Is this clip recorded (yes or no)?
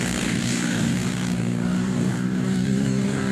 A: no